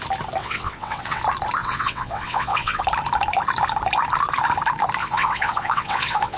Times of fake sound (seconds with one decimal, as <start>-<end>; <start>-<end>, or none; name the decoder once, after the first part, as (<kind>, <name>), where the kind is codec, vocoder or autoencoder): 0.4-1.2 (vocoder, WaveNeXt); 1.6-2.8; 5.0-6.4